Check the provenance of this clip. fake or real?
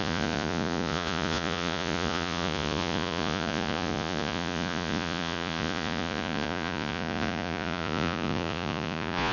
fake